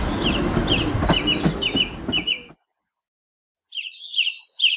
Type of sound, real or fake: real